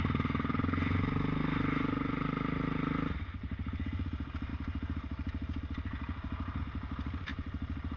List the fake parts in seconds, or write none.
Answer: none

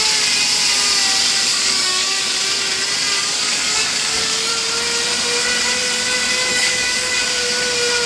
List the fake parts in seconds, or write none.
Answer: 1.5-2.2 (codec, DAC); 3.2-4.5; 6.5-7.2

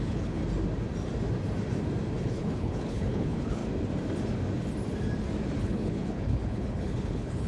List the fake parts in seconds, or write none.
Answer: 0.0-0.4 (codec, HILCodec); 2.2-3.6; 5.6-7.5

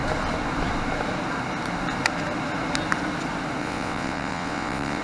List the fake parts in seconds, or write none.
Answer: 3.6-5.0 (vocoder, WaveNeXt)

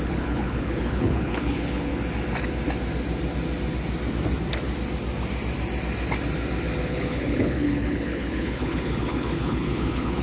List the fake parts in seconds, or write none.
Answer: 0.0-1.9 (codec, HILCodec); 6.9-10.2

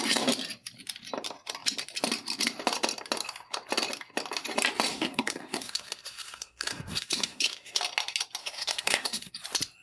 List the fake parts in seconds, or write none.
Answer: 4.9-7.8 (codec, SNAC); 8.4-9.3